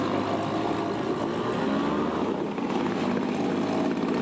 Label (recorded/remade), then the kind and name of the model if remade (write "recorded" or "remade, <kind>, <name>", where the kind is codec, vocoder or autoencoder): recorded